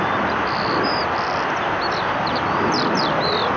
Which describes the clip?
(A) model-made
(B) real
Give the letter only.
B